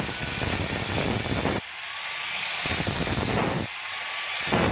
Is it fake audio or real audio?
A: real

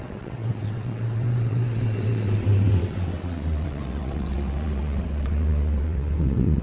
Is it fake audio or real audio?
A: fake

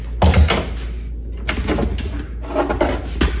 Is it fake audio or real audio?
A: real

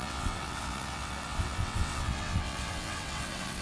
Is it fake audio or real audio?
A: fake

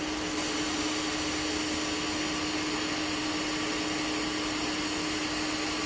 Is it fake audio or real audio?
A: real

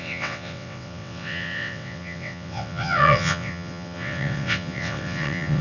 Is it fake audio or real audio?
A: fake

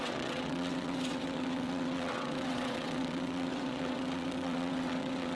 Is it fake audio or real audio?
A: fake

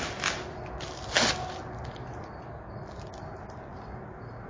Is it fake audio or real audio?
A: real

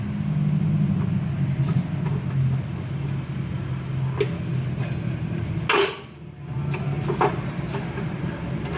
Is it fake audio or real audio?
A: real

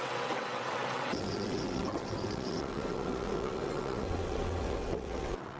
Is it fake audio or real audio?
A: fake